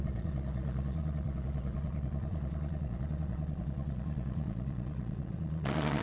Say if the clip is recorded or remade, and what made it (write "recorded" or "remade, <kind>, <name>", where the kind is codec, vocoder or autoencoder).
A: remade, vocoder, Vocos